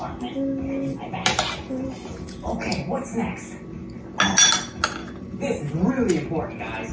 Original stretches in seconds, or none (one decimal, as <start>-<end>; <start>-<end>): 0.0-5.0; 5.9-6.9